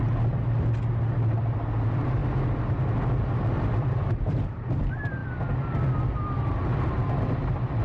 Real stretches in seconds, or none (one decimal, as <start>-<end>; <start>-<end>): 0.0-7.8